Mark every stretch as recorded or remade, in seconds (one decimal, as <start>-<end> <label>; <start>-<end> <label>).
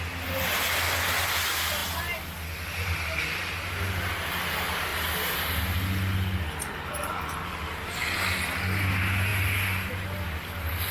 0.0-10.9 recorded